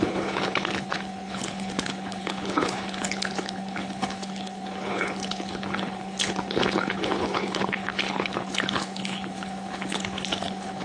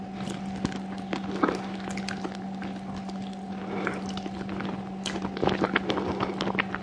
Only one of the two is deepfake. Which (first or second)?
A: first